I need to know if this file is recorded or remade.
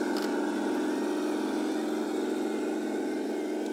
recorded